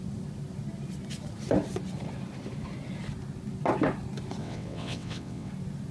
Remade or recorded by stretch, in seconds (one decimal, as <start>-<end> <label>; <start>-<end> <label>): 0.0-4.4 recorded; 4.4-5.5 remade; 5.5-5.9 recorded